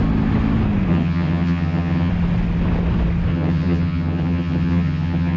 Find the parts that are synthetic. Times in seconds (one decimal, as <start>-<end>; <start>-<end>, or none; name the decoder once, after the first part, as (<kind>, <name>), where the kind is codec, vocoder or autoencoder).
0.9-2.1 (vocoder, HiFi-GAN); 3.3-5.4

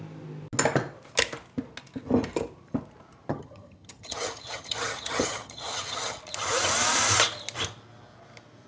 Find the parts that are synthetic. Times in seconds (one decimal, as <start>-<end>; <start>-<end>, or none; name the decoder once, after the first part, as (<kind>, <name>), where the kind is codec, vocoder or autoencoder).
3.3-6.2 (vocoder, HiFi-GAN)

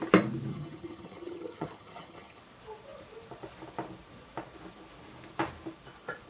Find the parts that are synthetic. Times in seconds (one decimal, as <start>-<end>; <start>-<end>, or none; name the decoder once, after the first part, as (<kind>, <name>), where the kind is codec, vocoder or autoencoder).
0.5-2.4 (vocoder, HiFi-GAN)

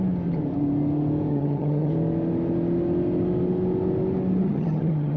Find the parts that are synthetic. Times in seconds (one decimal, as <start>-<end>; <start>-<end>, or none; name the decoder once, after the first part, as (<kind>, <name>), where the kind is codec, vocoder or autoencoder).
1.3-1.9 (vocoder, HiFi-GAN); 4.4-5.2

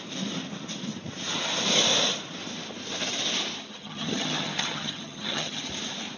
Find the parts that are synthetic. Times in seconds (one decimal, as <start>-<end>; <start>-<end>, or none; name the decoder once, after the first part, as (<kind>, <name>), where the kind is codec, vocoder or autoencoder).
3.6-5.7 (vocoder, HiFi-GAN)

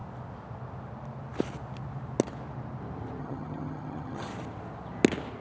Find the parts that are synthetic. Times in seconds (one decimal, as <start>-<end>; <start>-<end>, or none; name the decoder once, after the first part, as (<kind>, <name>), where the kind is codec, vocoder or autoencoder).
3.2-4.3 (vocoder, HiFi-GAN)

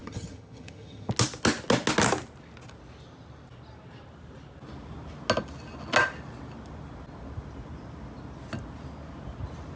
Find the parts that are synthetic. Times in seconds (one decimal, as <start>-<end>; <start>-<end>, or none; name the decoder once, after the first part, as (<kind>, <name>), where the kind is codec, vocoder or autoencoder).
0.0-1.1 (vocoder, HiFi-GAN)